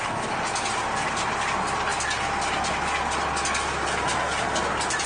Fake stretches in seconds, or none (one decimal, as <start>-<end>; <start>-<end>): none